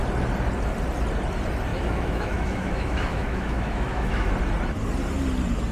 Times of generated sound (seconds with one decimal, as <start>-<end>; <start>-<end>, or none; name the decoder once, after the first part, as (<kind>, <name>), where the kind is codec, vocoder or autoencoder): 1.7-4.3 (autoencoder, DAC-VAE)